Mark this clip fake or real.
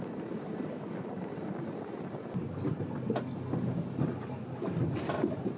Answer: real